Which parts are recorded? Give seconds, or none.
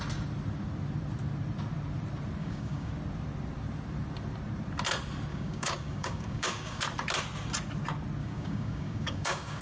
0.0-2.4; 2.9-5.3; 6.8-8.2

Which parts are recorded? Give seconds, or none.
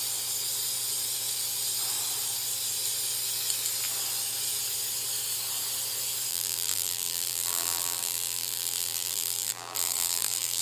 0.0-6.3